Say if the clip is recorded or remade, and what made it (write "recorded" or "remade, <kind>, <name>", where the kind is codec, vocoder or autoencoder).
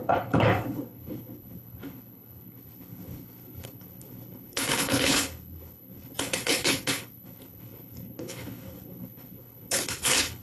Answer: remade, codec, HILCodec